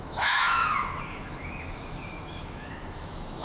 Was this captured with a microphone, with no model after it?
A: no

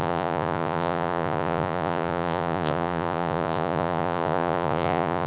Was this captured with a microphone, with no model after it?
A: no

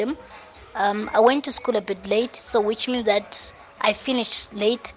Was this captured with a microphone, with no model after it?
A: yes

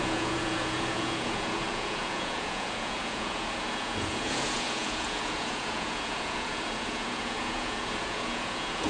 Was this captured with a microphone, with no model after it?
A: no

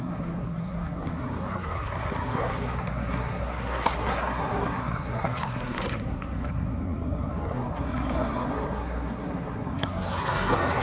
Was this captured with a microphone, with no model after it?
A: no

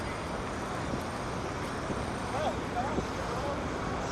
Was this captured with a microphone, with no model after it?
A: yes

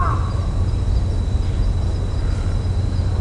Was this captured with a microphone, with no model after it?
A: yes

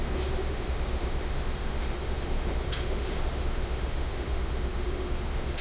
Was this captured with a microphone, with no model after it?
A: no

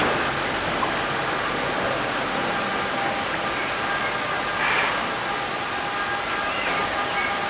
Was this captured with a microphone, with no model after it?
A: yes